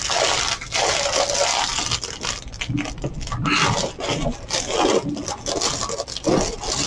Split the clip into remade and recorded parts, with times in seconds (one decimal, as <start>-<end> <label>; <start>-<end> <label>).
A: 0.0-6.9 recorded

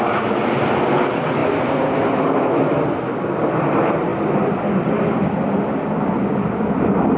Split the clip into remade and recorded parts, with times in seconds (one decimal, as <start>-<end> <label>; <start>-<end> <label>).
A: 0.0-7.2 recorded

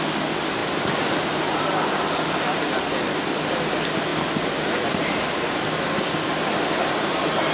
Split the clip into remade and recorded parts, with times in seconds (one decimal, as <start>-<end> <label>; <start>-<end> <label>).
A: 0.0-7.5 recorded

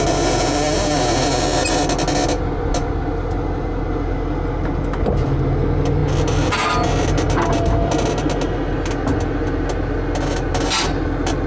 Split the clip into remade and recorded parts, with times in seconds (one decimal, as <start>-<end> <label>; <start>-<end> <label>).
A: 0.0-11.5 recorded